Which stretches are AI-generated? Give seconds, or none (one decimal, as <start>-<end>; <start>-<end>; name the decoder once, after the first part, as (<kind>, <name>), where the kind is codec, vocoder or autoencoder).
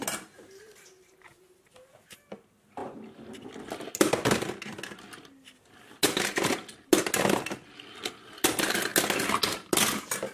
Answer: none